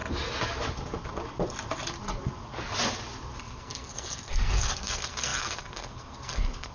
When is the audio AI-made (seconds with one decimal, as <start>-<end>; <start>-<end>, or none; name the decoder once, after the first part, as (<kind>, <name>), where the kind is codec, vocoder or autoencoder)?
3.4-6.7 (codec, SNAC)

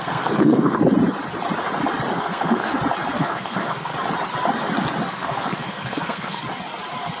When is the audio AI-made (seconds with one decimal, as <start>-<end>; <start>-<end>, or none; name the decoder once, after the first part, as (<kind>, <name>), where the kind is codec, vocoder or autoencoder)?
0.0-0.8 (codec, SNAC); 2.1-2.7; 3.2-3.9; 5.1-6.4

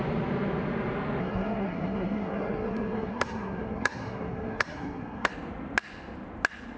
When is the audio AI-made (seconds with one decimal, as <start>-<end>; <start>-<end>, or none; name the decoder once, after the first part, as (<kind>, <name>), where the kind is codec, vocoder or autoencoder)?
1.2-5.3 (codec, SNAC)

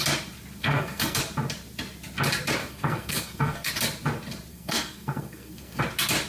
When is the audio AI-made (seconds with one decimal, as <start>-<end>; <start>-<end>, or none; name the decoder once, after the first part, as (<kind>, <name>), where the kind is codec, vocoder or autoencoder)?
0.6-1.2 (codec, SNAC); 2.6-3.7; 4.5-5.8

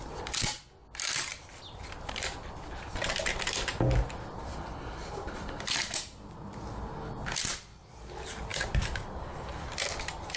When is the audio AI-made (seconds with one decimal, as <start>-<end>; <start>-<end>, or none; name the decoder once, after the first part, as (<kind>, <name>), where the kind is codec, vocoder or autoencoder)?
none

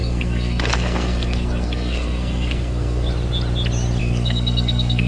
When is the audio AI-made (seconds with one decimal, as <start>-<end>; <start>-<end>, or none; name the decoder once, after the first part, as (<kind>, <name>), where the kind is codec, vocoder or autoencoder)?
0.0-3.1 (codec, SNAC); 4.0-5.1

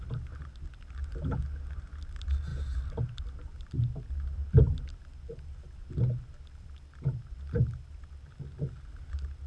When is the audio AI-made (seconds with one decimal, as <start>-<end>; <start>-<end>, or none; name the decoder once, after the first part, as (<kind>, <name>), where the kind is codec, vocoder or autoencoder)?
none